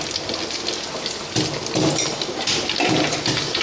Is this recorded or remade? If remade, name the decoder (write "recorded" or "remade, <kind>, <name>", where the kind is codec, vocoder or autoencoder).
recorded